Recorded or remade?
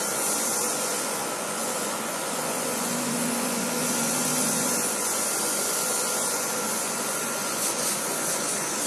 remade